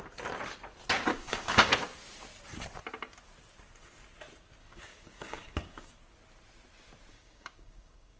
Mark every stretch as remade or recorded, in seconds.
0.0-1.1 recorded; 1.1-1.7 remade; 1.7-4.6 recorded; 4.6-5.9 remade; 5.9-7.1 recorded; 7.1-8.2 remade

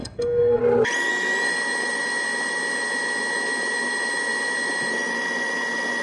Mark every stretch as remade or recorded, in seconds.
0.0-0.6 remade; 0.6-6.0 recorded

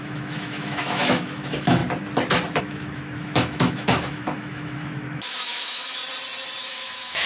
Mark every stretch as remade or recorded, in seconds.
0.0-1.8 remade; 1.8-2.6 recorded; 2.6-6.0 remade; 6.0-6.6 recorded; 6.6-7.3 remade

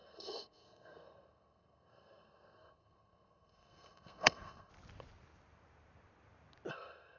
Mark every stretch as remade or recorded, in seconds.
0.0-4.7 remade; 4.7-6.7 recorded; 6.7-7.2 remade

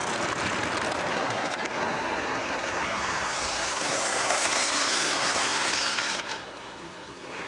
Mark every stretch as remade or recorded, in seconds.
0.0-1.1 recorded; 1.1-7.5 remade

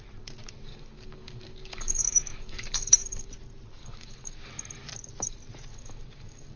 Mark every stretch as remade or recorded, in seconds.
0.0-0.7 recorded; 0.7-3.3 remade; 3.3-3.8 recorded; 3.8-4.5 remade; 4.5-5.7 recorded; 5.7-6.6 remade